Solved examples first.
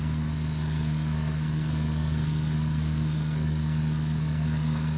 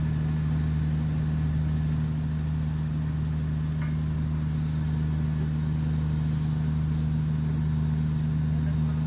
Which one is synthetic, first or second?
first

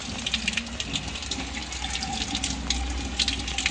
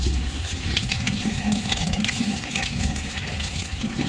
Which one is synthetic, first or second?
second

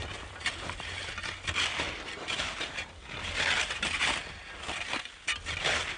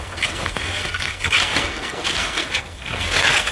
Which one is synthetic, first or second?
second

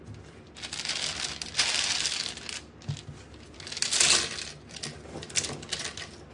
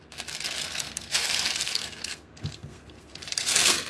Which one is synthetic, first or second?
second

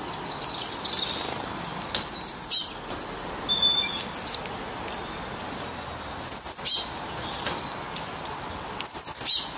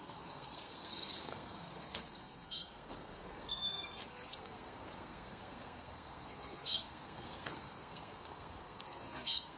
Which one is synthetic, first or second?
second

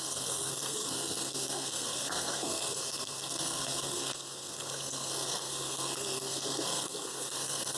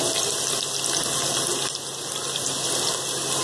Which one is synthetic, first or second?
first